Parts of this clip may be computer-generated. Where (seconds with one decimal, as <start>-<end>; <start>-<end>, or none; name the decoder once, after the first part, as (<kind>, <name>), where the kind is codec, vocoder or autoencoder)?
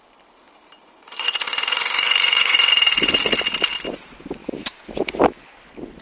0.8-2.7 (vocoder, Vocos)